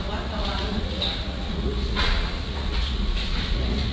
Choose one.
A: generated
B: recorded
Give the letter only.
A